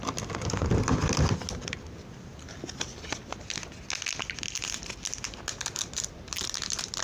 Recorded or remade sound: recorded